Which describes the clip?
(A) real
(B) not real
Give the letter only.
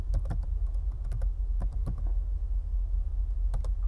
A